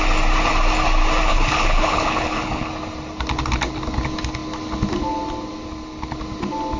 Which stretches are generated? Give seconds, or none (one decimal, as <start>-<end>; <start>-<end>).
1.3-2.7